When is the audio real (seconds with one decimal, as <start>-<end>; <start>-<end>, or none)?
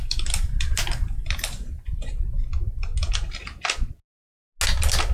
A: 3.1-5.1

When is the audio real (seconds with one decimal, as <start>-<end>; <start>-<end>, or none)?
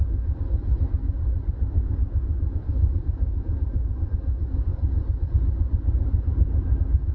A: 0.0-1.0; 4.1-4.7; 5.3-7.1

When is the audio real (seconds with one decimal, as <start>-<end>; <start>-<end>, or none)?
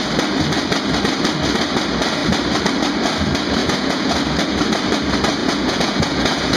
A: 0.0-3.6; 4.2-5.4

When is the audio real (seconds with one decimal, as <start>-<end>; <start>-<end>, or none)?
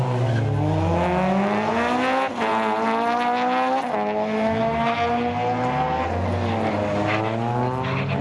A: 0.0-8.2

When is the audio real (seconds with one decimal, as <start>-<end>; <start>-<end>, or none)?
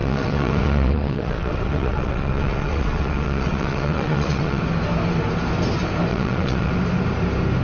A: 4.6-6.1; 6.7-7.6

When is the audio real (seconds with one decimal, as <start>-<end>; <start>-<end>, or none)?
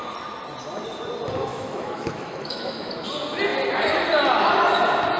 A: 0.0-1.5; 2.9-5.2